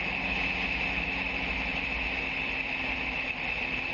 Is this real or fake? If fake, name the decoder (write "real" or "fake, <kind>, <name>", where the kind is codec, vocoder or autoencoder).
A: real